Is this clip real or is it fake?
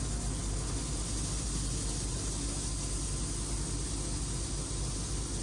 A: real